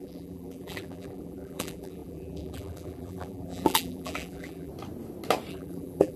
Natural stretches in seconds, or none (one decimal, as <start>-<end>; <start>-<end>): 4.7-5.5